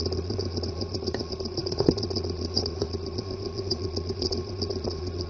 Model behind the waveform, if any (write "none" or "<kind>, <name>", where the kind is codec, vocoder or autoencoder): vocoder, Vocos